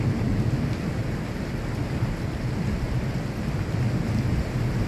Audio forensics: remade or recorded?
recorded